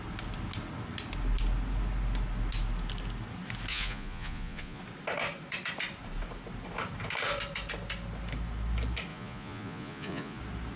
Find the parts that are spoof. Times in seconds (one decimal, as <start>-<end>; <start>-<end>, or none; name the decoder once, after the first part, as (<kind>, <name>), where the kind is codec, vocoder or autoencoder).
3.7-4.8 (vocoder, Vocos); 9.1-10.4